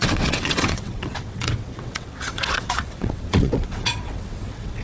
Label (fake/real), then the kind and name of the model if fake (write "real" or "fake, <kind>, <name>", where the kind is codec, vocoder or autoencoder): fake, vocoder, WaveNeXt